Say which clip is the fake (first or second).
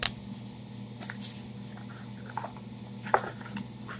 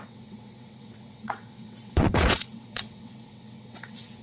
second